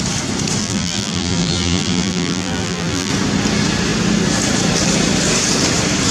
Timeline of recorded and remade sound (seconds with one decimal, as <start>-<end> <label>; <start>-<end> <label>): 0.0-0.6 recorded; 0.6-3.1 remade; 3.1-6.1 recorded